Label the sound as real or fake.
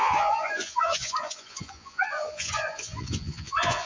fake